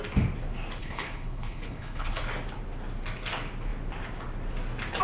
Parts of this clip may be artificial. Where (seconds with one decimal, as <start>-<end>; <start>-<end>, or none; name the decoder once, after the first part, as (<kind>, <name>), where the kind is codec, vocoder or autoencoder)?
0.8-2.2 (codec, HILCodec)